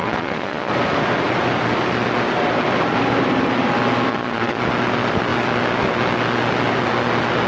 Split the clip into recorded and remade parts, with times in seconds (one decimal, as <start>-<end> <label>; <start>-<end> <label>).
0.0-0.7 remade; 0.7-4.1 recorded; 4.1-4.6 remade; 4.6-7.5 recorded